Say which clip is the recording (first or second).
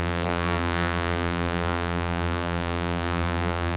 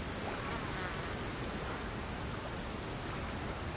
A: second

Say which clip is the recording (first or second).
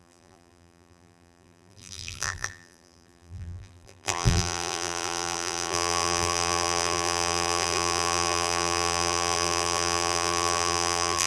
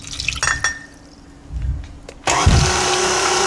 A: second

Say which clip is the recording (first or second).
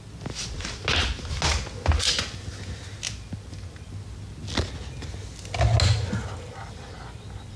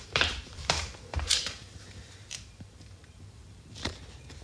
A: first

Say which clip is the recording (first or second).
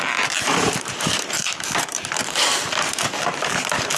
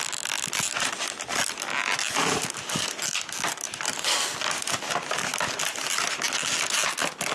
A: second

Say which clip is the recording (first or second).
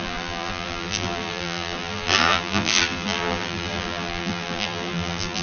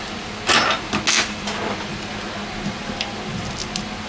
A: second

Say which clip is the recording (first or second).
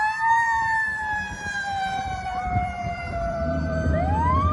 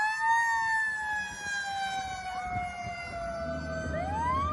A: second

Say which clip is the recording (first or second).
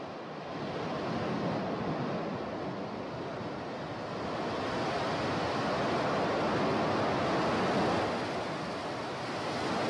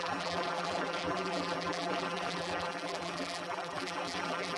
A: first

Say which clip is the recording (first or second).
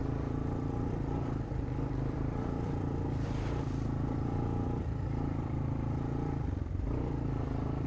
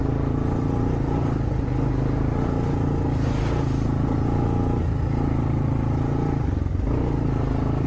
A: second